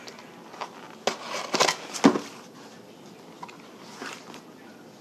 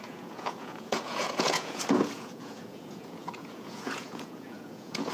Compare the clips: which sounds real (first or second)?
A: first